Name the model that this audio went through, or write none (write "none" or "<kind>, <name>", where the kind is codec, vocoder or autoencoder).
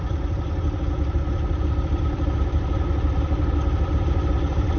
vocoder, BigVGAN v2